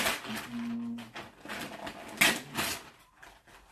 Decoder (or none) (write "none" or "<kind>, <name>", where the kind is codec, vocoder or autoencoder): none